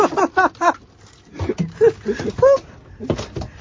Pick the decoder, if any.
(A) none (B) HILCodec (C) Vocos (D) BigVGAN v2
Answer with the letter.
A